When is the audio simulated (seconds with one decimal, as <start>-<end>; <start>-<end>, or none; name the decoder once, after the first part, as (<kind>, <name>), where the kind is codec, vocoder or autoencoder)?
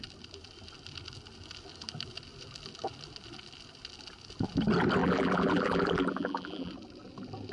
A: 5.0-6.7 (vocoder, BigVGAN v2)